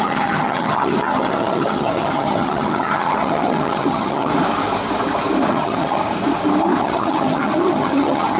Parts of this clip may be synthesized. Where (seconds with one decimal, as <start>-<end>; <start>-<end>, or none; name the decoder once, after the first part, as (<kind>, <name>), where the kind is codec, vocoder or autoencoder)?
0.0-4.3 (vocoder, HiFi-GAN); 5.5-6.0; 6.8-8.4